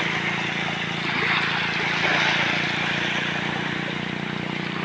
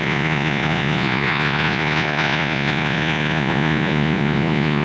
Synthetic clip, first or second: second